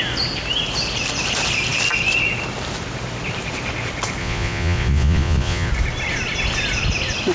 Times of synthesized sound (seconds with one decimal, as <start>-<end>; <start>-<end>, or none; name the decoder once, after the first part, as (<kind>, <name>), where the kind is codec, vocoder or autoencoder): 4.2-5.7 (vocoder, Vocos)